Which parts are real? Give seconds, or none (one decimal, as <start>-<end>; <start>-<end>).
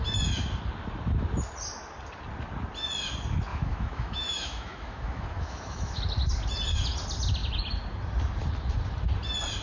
0.0-3.5; 6.0-9.6